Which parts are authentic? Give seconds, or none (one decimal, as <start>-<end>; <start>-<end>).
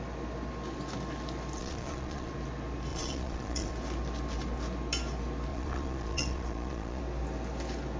0.0-1.6; 2.3-2.9; 3.7-5.5; 7.0-8.0